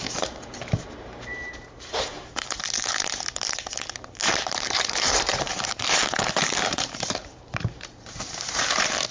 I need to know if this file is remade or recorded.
remade